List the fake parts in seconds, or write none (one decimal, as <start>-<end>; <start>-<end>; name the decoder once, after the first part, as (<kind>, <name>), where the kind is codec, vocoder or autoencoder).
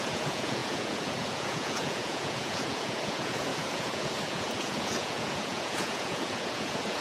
0.0-7.0 (vocoder, Vocos)